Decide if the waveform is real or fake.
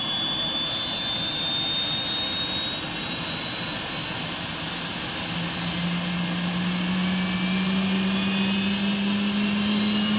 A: real